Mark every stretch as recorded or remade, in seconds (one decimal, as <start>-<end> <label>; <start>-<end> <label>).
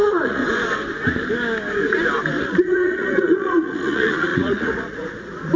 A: 0.0-0.4 remade; 0.4-2.4 recorded; 2.4-5.6 remade